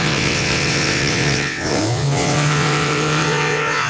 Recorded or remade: remade